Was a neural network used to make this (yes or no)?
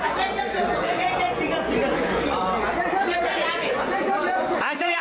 yes